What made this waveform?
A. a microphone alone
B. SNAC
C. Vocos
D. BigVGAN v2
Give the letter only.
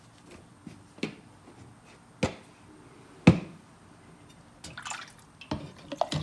A